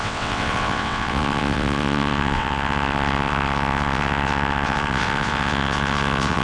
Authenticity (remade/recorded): remade